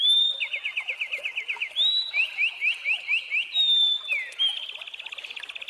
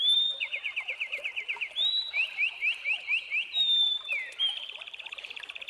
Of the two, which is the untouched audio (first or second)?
first